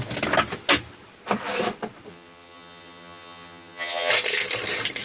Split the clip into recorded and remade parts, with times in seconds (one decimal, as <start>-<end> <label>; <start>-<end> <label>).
0.0-2.1 recorded; 2.1-4.1 remade; 4.1-5.0 recorded